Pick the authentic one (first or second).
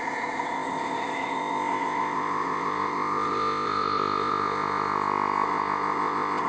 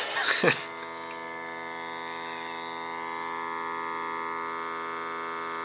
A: second